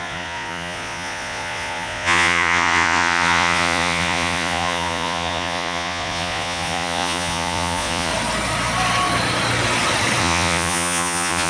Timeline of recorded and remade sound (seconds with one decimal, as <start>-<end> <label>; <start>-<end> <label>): 0.0-8.1 remade; 8.1-10.2 recorded; 10.2-11.5 remade